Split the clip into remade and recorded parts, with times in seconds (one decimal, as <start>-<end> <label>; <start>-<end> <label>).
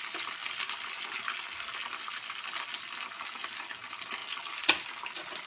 0.0-0.4 recorded; 0.4-0.9 remade; 0.9-4.2 recorded; 4.2-4.7 remade; 4.7-5.5 recorded